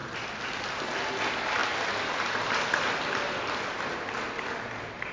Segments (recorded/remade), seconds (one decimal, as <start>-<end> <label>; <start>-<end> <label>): 0.0-5.1 recorded